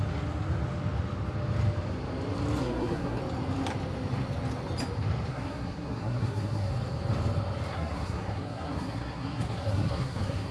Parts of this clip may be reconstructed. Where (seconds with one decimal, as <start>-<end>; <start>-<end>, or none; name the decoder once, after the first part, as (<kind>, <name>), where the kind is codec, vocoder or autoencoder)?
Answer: 2.6-3.2 (codec, SNAC); 5.3-6.7; 7.7-10.5